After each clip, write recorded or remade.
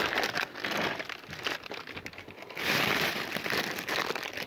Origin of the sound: recorded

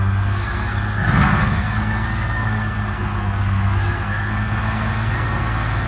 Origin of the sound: remade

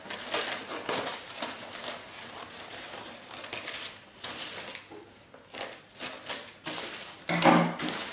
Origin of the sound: recorded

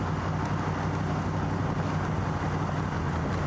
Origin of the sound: recorded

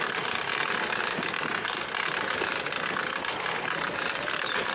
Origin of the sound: recorded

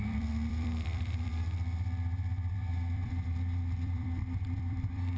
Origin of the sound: remade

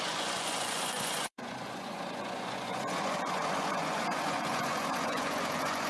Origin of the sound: remade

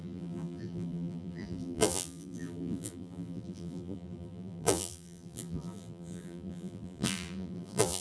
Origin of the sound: remade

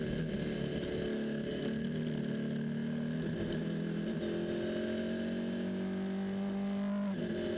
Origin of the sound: recorded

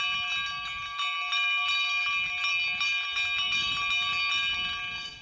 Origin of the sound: recorded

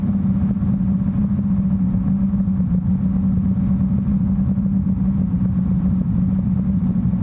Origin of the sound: recorded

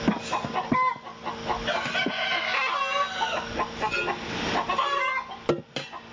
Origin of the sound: recorded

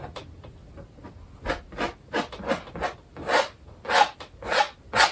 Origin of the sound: recorded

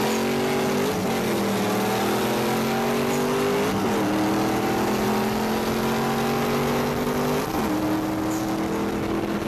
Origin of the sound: recorded